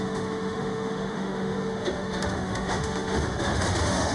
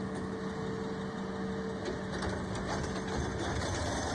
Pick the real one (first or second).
second